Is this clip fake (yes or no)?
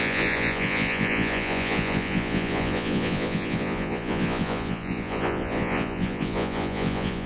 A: yes